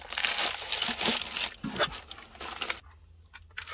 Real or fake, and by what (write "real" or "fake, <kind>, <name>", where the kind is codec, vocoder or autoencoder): real